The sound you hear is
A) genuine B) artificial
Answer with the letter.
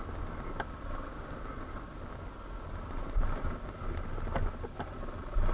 A